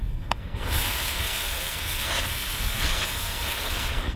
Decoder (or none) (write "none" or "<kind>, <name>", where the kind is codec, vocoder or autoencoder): codec, SNAC